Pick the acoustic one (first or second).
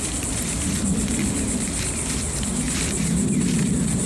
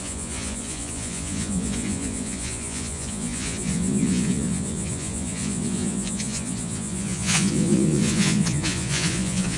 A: first